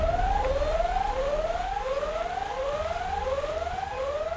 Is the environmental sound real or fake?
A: real